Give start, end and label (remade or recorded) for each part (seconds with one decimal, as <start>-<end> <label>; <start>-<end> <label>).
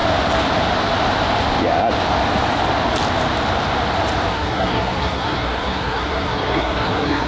0.0-4.3 recorded; 4.3-7.3 remade